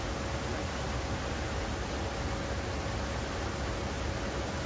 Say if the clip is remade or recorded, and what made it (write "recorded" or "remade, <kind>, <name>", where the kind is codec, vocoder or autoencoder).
recorded